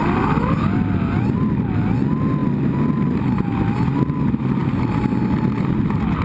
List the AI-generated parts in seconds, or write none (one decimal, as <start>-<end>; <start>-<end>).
none